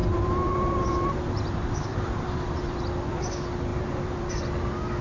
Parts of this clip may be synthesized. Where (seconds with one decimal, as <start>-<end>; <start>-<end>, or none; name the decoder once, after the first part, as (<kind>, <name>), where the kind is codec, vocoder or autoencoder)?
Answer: 0.0-2.8 (vocoder, BigVGAN v2); 3.7-4.3

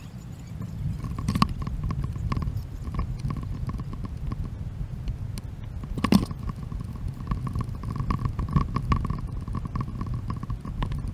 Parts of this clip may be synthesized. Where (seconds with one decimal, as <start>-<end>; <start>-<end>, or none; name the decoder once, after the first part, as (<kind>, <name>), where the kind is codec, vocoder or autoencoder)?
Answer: none

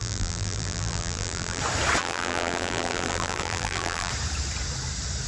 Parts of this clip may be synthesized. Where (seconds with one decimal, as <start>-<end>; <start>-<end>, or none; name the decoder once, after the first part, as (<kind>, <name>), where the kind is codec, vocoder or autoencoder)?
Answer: 0.0-1.6 (vocoder, BigVGAN v2); 2.0-4.1